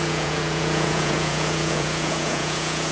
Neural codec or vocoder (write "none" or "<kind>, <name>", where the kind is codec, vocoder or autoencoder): vocoder, Vocos